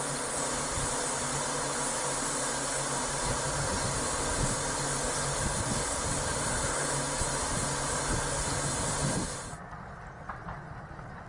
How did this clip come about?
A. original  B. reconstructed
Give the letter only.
A